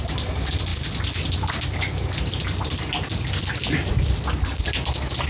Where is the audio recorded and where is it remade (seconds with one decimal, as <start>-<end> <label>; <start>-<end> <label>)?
0.0-5.3 recorded

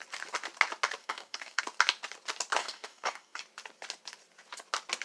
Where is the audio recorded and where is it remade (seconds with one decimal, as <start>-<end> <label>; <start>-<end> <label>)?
0.0-1.0 recorded; 1.0-1.6 remade; 1.6-2.6 recorded; 2.6-3.4 remade; 3.4-5.0 recorded

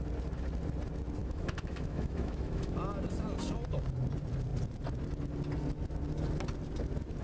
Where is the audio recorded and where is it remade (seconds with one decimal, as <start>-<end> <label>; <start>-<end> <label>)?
0.0-1.2 recorded; 1.2-2.8 remade; 2.8-7.2 recorded